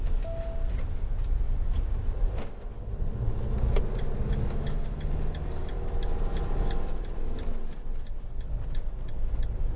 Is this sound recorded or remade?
recorded